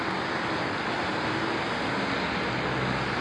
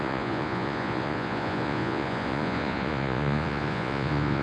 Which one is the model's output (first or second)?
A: second